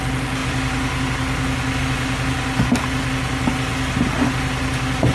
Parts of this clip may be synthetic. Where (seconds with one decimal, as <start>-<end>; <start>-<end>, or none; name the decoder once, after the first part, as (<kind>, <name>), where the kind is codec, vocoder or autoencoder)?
none